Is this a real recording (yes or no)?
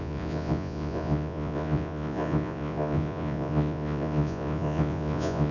no